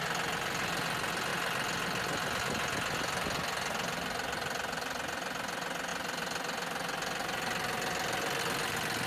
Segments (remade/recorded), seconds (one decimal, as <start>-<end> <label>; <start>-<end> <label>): 0.0-9.1 recorded